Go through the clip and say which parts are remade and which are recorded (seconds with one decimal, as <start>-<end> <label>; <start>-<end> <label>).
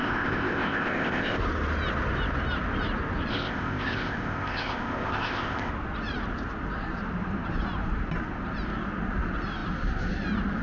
0.0-1.4 remade; 1.4-3.3 recorded; 3.3-5.7 remade; 5.7-10.6 recorded